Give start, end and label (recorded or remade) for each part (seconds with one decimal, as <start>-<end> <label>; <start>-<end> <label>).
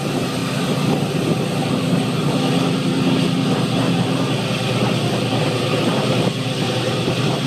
0.0-0.4 remade; 0.4-1.7 recorded; 1.7-2.2 remade; 2.2-5.4 recorded; 5.4-7.5 remade